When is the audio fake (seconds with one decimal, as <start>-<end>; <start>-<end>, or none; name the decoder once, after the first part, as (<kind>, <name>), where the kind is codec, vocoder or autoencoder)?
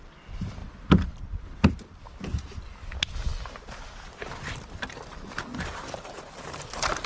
none